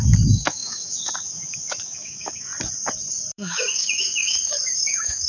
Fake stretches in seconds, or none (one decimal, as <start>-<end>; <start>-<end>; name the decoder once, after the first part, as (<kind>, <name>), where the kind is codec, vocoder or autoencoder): 0.0-2.5 (autoencoder, DAC-VAE); 3.3-5.3